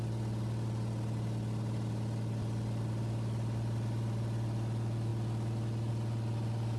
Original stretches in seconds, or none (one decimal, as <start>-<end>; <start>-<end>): 0.0-6.8